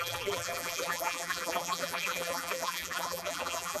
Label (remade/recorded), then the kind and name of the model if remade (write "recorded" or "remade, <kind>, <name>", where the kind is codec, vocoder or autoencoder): remade, vocoder, BigVGAN v2